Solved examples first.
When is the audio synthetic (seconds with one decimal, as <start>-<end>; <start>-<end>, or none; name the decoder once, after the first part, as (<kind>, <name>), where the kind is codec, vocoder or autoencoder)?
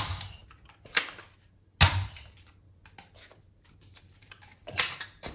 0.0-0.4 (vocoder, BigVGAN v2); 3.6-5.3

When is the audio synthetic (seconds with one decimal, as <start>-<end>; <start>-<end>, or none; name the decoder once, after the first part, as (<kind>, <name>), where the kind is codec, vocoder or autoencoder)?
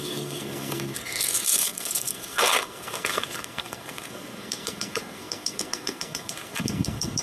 0.0-7.2 (codec, SNAC)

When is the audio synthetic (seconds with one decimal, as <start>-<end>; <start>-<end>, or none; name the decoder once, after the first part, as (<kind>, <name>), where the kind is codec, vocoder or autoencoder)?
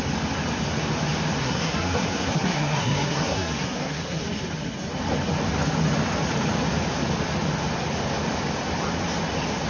1.4-4.2 (codec, SNAC)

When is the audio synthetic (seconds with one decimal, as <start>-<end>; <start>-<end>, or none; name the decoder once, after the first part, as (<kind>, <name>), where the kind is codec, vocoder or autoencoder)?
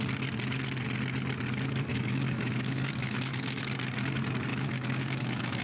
1.9-3.6 (autoencoder, DAC-VAE); 4.5-5.6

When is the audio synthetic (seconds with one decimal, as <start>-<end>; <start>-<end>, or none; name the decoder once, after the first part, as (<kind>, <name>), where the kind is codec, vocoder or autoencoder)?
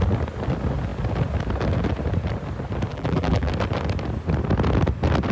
2.9-3.5 (vocoder, BigVGAN v2)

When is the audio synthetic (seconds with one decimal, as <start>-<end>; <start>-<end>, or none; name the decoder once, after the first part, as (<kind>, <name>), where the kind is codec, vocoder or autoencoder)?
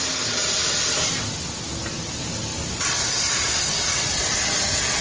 none